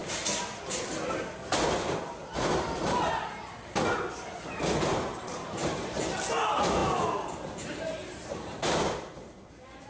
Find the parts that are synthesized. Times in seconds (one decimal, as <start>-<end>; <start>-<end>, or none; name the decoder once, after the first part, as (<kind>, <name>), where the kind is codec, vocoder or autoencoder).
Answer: 5.1-6.0 (vocoder, BigVGAN v2); 6.8-9.5